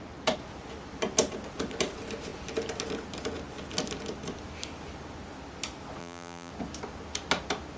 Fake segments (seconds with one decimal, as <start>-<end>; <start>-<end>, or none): 6.0-6.5